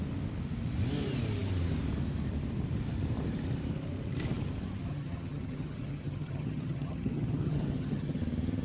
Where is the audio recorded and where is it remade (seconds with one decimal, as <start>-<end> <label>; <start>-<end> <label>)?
0.0-4.9 recorded; 4.9-8.2 remade; 8.2-8.6 recorded